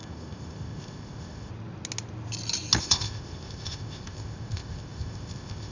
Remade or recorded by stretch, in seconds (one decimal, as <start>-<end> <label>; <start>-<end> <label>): 0.0-1.5 remade; 1.5-2.8 recorded; 2.8-5.7 remade

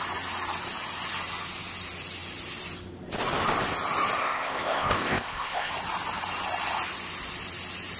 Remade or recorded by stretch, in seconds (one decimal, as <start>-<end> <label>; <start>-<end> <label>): 0.0-4.2 recorded; 4.2-5.7 remade; 5.7-8.0 recorded